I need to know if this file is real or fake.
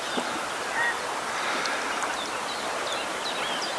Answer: real